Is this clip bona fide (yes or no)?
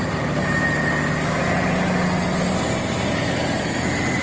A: yes